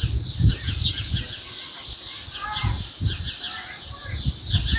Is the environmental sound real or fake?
real